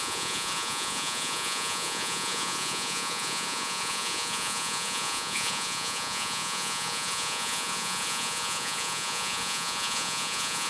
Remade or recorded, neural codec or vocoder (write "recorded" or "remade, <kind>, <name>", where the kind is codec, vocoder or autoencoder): remade, vocoder, Vocos